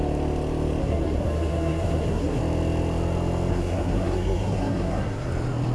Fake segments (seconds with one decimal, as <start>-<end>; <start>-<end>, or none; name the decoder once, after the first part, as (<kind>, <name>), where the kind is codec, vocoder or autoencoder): 0.8-2.4 (codec, SNAC); 3.5-5.3